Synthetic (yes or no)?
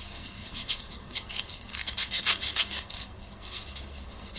yes